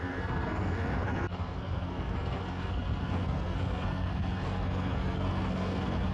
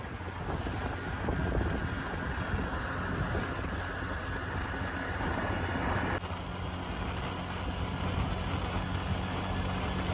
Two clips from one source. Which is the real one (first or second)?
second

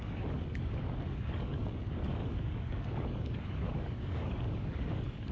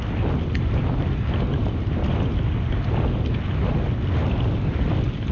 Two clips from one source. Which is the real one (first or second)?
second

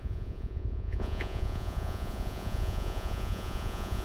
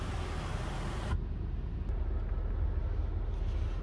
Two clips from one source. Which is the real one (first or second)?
second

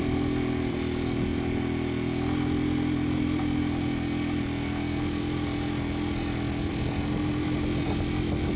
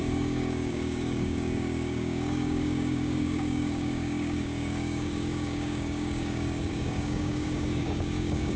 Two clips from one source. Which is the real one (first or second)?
first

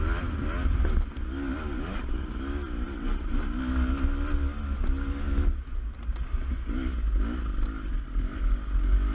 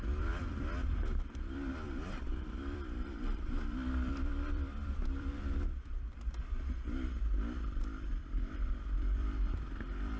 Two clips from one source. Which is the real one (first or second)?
first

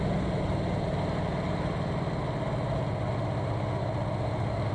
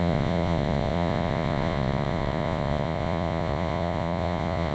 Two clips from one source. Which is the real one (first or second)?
first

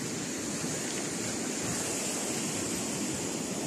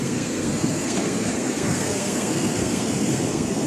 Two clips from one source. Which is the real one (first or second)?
first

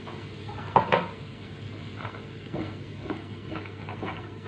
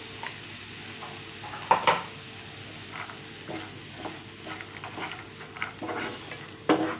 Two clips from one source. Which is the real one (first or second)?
second